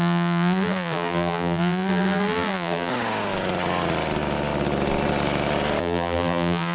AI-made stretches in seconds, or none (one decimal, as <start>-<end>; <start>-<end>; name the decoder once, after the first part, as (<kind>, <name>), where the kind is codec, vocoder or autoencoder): 0.0-2.9 (vocoder, BigVGAN v2); 5.8-6.7